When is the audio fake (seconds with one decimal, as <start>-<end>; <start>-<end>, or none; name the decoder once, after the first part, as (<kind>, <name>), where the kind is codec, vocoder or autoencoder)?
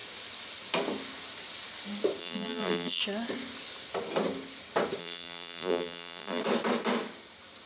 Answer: 2.2-3.0 (vocoder, BigVGAN v2); 5.0-6.4